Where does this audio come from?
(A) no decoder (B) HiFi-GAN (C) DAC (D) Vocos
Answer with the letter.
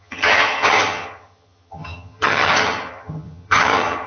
B